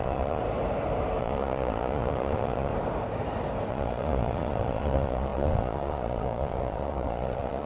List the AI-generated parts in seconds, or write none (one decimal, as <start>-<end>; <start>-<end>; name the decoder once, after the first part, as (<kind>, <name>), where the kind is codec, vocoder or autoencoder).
0.0-0.4 (vocoder, Vocos); 1.2-2.7; 3.7-7.7